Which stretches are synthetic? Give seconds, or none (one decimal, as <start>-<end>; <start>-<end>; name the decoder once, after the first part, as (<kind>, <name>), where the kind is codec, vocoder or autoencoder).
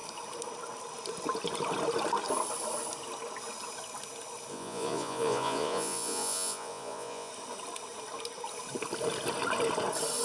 4.5-7.3 (vocoder, Vocos)